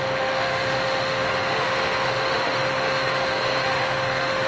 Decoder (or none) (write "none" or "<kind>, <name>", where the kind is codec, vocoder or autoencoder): autoencoder, DAC-VAE